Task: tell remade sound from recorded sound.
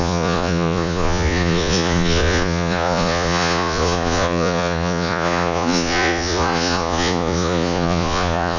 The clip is remade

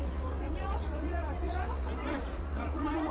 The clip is remade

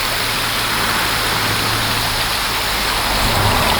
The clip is recorded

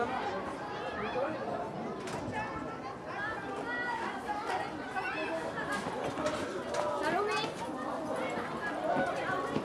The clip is recorded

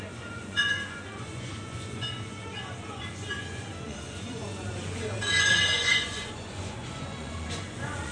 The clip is remade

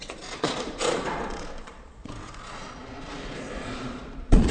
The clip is remade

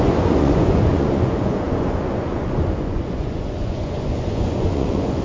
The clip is remade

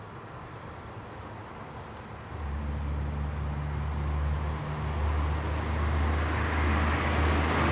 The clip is recorded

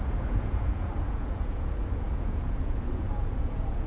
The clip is remade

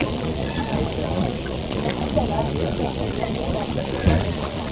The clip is remade